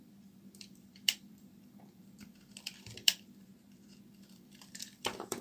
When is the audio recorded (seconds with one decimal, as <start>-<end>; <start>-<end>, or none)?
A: 3.5-4.0